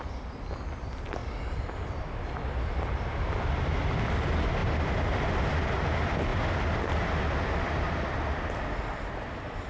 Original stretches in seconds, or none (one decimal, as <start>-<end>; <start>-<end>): 0.0-9.7